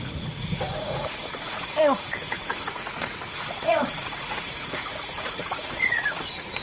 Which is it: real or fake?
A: fake